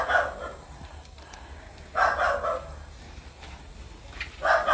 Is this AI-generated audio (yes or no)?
no